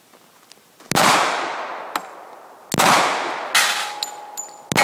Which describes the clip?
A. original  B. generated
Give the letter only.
A